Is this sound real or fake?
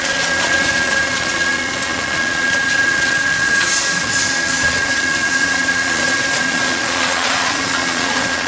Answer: fake